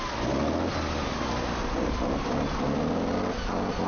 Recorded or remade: recorded